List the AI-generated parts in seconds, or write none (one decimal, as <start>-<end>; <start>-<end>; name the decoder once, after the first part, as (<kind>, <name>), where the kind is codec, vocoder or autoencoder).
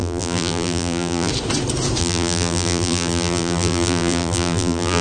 0.0-1.3 (vocoder, BigVGAN v2); 2.0-5.0